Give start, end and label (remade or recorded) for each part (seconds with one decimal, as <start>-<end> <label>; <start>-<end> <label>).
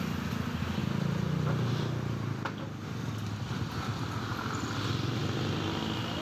0.0-6.2 recorded